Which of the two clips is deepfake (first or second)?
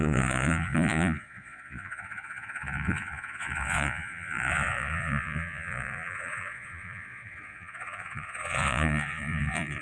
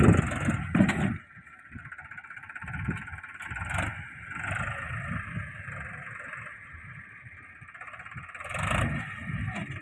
first